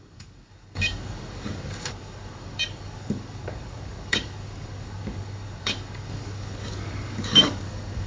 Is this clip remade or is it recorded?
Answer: remade